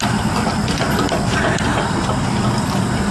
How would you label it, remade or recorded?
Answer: remade